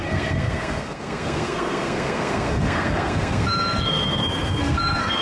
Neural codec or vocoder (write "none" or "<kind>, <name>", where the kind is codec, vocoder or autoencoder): codec, SNAC